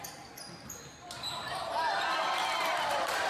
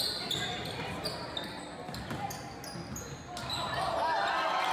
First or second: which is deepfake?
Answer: first